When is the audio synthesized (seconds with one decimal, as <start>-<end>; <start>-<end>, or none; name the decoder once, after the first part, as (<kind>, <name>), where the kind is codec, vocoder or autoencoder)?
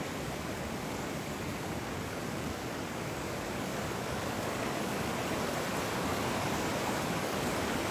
0.0-5.1 (codec, DAC); 5.8-7.9